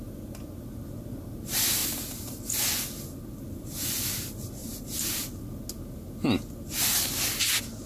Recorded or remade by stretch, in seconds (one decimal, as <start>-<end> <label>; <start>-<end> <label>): 0.0-1.8 recorded; 1.8-2.4 remade; 2.4-4.6 recorded; 4.6-5.3 remade; 5.3-7.9 recorded